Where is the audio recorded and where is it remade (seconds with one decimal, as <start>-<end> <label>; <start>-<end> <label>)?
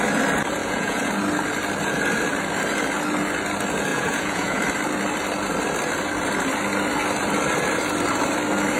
0.0-0.6 recorded; 0.6-1.1 remade; 1.1-3.9 recorded; 3.9-4.6 remade; 4.6-8.8 recorded